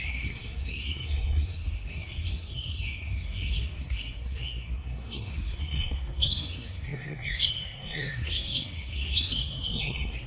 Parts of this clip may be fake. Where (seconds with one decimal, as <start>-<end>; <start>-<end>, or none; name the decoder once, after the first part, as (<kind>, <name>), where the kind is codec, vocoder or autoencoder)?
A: 0.0-10.3 (codec, SNAC)